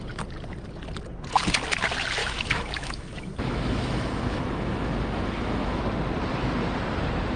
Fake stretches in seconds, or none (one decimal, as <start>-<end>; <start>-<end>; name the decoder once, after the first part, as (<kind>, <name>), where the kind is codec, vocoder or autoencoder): 2.2-5.8 (autoencoder, DAC-VAE)